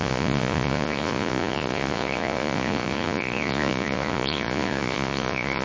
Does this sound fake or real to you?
fake